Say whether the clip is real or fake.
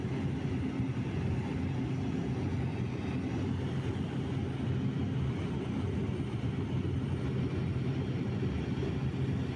real